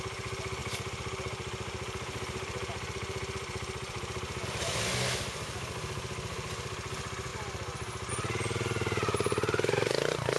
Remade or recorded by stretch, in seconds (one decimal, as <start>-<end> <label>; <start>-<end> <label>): 0.0-0.6 recorded; 0.6-4.8 remade; 4.8-7.3 recorded; 7.3-8.1 remade; 8.1-10.4 recorded